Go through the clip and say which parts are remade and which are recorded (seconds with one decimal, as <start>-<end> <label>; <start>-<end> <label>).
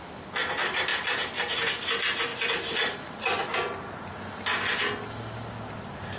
0.0-6.2 recorded